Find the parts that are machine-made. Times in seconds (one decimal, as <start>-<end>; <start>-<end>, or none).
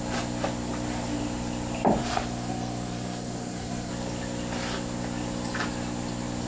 2.0-3.9